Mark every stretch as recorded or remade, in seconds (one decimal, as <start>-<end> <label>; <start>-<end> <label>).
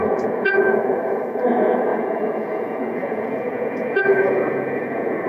0.0-5.3 remade